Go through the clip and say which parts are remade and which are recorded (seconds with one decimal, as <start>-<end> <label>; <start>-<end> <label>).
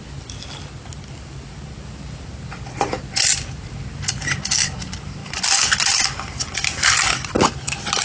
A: 0.0-8.0 recorded